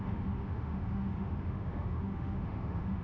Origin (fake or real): fake